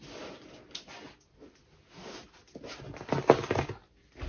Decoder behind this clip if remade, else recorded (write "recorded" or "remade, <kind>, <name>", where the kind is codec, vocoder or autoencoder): recorded